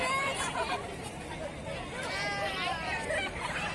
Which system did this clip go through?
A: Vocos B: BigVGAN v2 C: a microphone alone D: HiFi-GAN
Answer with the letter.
C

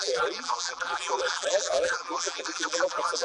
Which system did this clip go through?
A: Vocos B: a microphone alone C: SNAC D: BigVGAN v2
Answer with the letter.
D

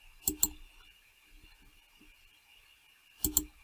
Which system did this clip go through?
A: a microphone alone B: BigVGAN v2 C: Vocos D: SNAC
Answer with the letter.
A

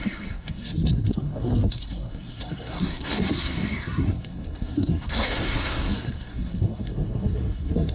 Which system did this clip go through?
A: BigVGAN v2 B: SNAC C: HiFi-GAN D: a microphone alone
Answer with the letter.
B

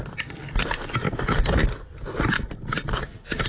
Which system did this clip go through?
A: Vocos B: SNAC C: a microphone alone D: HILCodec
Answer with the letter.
C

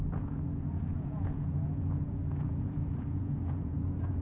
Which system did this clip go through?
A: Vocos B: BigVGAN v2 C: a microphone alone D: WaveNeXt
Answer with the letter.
A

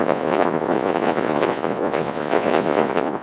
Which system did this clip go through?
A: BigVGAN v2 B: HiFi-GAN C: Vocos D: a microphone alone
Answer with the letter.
C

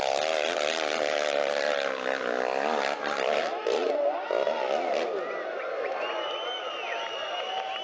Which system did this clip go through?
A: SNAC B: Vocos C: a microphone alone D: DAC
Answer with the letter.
C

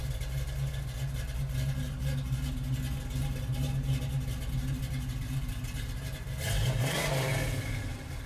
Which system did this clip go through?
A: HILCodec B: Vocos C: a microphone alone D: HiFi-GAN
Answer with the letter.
C